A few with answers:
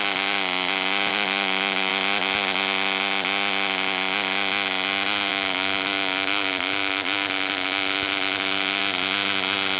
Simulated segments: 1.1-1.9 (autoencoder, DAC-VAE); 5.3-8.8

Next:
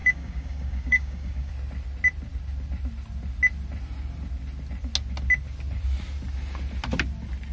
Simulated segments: 0.0-1.5 (codec, DAC)

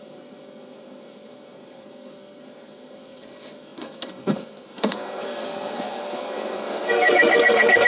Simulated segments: 0.0-7.9 (codec, SNAC)

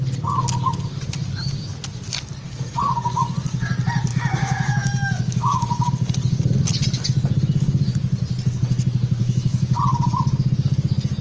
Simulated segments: 4.1-5.9 (autoencoder, DAC-VAE); 9.2-9.8

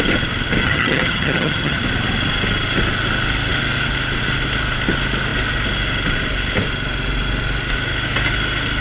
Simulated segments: 0.6-1.8 (vocoder, HiFi-GAN)